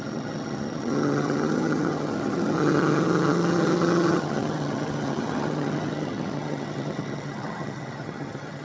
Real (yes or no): no